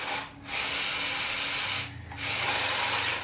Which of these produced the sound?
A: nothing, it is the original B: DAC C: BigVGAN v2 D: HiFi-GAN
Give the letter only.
A